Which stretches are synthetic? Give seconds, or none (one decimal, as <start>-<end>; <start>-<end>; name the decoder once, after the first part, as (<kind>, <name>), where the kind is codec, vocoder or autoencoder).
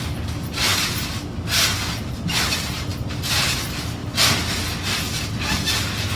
none